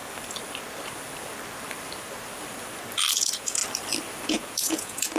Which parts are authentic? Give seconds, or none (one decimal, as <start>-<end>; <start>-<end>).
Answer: 0.0-3.1; 3.6-4.3